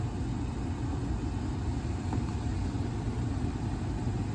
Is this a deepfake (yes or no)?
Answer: no